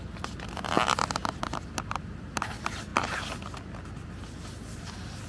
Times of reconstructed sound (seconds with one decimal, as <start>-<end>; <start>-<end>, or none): none